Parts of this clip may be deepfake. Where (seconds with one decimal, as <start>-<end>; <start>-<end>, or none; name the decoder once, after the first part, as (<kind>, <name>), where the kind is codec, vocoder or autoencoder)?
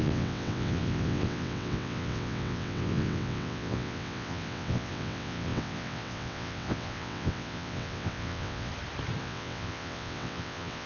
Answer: 0.0-8.7 (vocoder, WaveNeXt); 9.2-10.9